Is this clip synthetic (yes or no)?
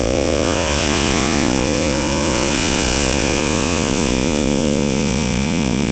yes